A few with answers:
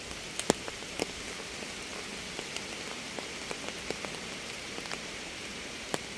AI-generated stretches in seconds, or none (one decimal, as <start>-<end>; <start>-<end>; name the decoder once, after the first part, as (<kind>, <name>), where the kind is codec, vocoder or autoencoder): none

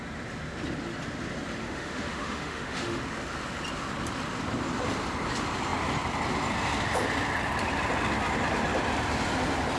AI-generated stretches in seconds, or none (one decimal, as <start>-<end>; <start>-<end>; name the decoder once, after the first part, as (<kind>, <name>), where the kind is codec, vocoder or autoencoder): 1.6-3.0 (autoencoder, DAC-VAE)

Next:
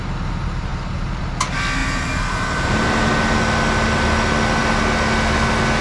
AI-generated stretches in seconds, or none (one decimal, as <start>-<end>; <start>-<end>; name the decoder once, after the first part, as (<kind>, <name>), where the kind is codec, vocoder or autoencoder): 1.8-3.1 (vocoder, BigVGAN v2)

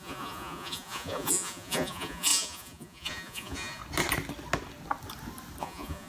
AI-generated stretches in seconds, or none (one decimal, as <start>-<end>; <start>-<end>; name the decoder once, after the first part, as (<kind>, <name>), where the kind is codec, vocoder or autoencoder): 0.0-3.8 (vocoder, Vocos); 5.6-6.1

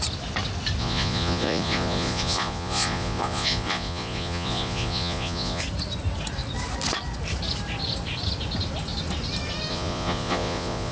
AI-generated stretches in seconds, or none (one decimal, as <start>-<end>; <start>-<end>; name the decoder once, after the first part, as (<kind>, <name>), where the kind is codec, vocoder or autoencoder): 0.8-5.6 (vocoder, Vocos); 9.7-10.9

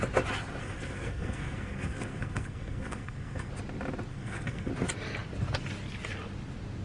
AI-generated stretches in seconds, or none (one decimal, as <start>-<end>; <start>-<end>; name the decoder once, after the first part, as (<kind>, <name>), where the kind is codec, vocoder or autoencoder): 0.6-3.5 (codec, SNAC); 4.1-4.7